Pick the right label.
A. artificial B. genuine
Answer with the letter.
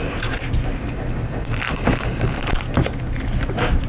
B